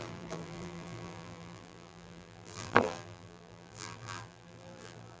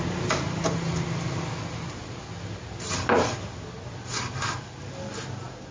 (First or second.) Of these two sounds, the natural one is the second